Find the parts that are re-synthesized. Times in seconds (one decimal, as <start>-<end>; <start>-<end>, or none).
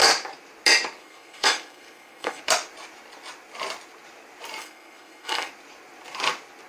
1.0-2.4; 4.6-5.5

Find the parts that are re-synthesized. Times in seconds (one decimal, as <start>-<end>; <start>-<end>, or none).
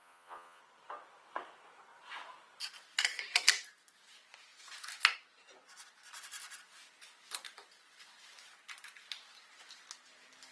0.0-0.6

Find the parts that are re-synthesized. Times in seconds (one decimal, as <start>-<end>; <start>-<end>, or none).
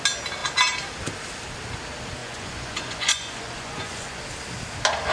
2.2-4.2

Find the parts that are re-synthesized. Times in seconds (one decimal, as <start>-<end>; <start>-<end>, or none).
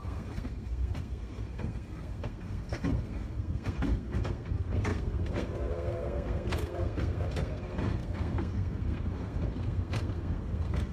0.0-10.9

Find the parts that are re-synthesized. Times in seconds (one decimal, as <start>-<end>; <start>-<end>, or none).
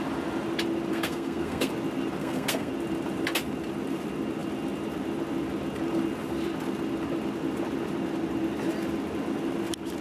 0.9-1.7; 2.2-2.7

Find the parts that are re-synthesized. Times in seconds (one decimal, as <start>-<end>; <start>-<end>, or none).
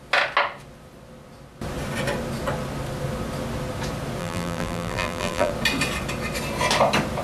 4.2-5.5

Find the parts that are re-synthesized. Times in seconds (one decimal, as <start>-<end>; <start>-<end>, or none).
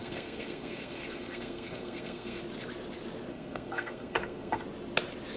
0.0-2.4; 3.3-4.6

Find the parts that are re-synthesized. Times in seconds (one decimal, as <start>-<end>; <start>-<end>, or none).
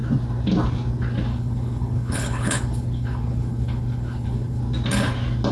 1.3-4.6